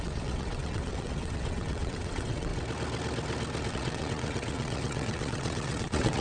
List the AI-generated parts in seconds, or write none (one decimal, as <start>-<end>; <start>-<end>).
0.0-2.5; 3.7-6.2